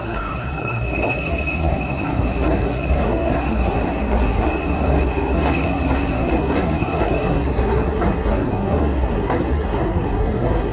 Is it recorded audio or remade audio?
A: remade